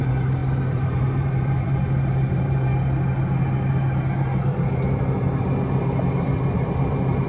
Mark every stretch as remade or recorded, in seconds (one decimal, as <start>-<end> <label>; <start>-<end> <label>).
0.0-2.7 remade; 2.7-6.1 recorded; 6.1-7.3 remade